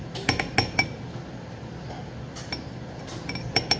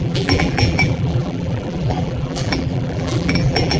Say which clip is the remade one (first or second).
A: second